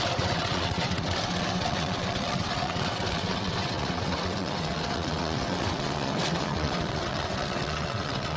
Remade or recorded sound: remade